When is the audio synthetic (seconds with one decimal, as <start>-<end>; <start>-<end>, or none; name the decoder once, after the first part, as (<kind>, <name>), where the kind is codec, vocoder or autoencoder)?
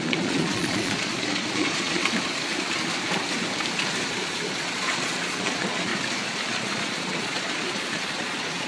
0.0-2.0 (vocoder, Vocos); 4.1-5.9; 6.5-8.7